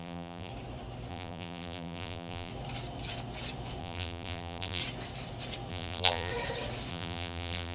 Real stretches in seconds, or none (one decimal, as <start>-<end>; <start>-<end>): 0.5-1.1; 2.5-3.8; 4.8-5.7; 6.3-6.9